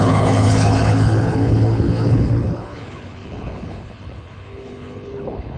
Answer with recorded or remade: remade